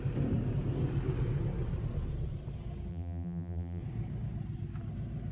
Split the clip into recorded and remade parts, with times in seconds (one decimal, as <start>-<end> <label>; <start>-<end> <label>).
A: 0.0-2.9 recorded; 2.9-3.8 remade; 3.8-5.3 recorded